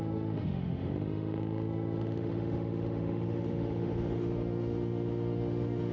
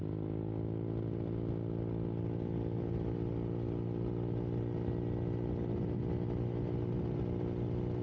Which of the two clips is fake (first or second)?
first